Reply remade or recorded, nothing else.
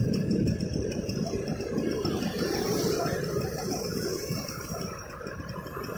remade